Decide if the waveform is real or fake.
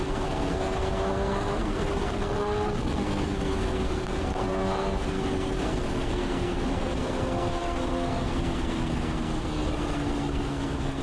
fake